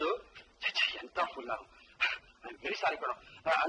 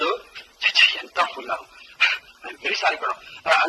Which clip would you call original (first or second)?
first